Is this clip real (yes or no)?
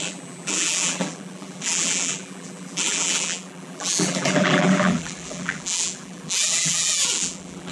no